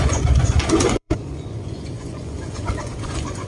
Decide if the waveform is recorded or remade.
remade